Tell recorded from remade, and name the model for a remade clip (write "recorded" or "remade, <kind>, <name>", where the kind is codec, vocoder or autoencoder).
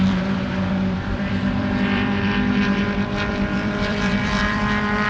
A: remade, vocoder, BigVGAN v2